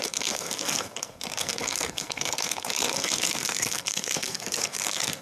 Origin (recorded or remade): remade